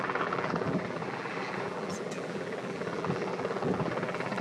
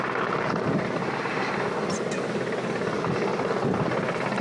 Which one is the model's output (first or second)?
first